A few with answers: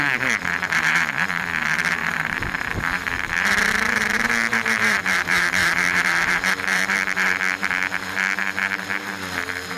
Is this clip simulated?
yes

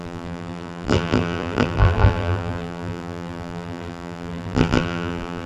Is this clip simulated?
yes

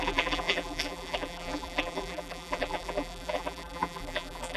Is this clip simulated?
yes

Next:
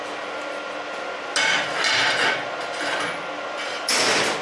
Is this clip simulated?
no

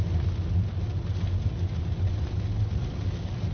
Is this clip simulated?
no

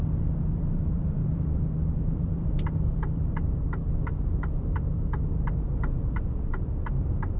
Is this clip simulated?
yes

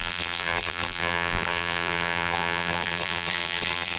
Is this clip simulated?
yes